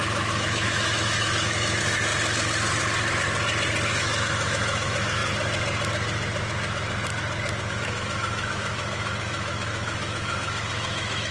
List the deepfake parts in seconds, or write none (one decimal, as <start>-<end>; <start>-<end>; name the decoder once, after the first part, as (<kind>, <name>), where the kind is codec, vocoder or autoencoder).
0.0-2.1 (autoencoder, DAC-VAE); 3.9-5.2; 7.7-11.3